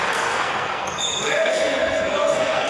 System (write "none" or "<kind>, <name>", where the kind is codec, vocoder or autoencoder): codec, SNAC